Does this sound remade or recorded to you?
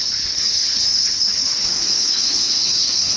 remade